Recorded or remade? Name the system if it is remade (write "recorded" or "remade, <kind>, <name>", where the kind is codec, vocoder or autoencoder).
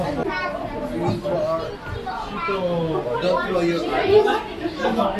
recorded